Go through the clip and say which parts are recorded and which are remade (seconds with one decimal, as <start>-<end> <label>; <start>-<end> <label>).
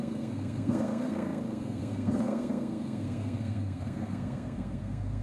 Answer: 0.0-5.2 remade